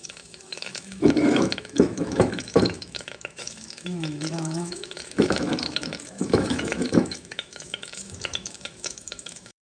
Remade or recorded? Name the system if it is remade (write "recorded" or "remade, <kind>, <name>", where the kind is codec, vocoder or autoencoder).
remade, autoencoder, DAC-VAE